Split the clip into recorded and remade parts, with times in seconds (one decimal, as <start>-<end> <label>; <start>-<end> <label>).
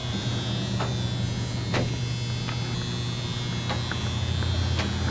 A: 0.0-5.1 recorded